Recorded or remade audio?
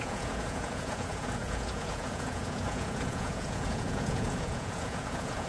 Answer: remade